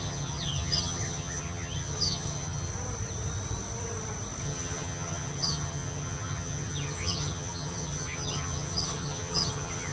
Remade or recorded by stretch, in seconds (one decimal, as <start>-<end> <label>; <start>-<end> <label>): 0.0-2.7 remade; 2.7-4.4 recorded; 4.4-9.9 remade